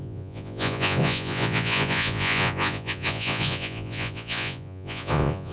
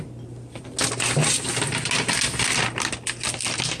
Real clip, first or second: second